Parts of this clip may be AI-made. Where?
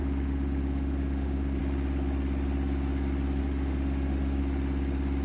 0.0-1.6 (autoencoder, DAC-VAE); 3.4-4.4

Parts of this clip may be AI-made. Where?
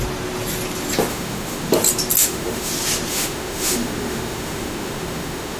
1.1-1.7 (autoencoder, DAC-VAE); 2.2-2.7; 3.1-5.6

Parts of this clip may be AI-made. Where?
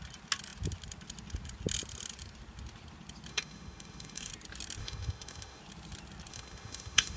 3.3-4.3 (autoencoder, DAC-VAE); 4.8-5.6; 6.3-7.2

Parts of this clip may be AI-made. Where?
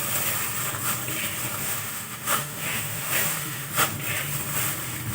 1.6-3.7 (autoencoder, DAC-VAE)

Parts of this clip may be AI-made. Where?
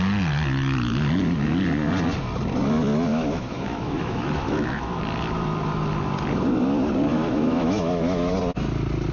3.1-5.0 (autoencoder, DAC-VAE); 7.1-8.3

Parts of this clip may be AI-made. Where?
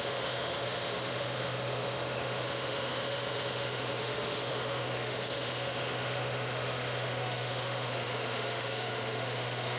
0.0-9.8 (autoencoder, DAC-VAE)